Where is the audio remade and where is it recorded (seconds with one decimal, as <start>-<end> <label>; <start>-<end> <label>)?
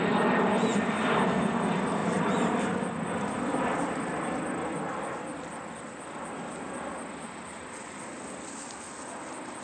0.0-9.6 recorded